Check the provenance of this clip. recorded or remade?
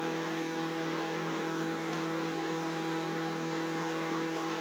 remade